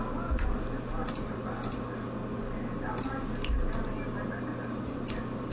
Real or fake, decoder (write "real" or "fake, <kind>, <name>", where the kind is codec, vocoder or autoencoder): real